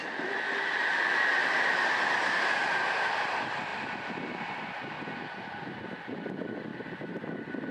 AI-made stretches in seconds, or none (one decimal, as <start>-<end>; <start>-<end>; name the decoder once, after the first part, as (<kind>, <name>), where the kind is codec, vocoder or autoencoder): 6.7-7.7 (vocoder, BigVGAN v2)